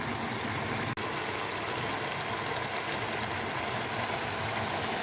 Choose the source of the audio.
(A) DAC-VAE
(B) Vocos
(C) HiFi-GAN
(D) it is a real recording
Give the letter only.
D